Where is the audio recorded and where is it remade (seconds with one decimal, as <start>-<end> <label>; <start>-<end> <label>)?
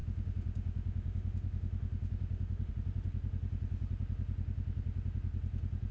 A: 0.0-2.7 remade; 2.7-5.9 recorded